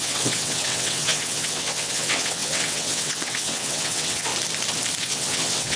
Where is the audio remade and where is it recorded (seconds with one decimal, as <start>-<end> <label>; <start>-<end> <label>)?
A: 0.0-4.3 remade; 4.3-5.0 recorded; 5.0-5.8 remade